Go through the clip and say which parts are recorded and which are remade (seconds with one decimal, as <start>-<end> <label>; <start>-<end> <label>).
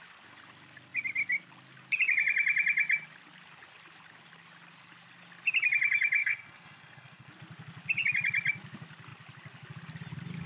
0.0-6.2 recorded; 6.2-7.3 remade; 7.3-10.5 recorded